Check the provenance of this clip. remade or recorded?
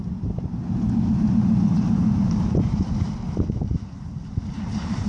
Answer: remade